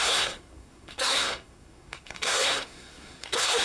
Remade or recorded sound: remade